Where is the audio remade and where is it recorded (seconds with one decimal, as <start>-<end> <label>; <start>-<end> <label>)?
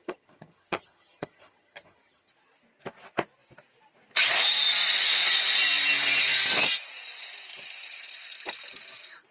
0.0-2.3 remade; 2.3-9.3 recorded